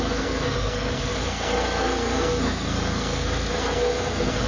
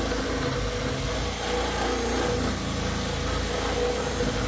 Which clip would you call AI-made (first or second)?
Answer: first